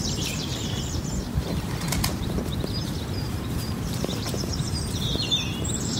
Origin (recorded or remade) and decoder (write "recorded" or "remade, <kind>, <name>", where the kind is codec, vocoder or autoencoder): remade, vocoder, BigVGAN v2